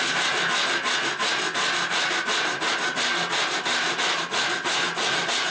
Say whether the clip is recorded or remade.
recorded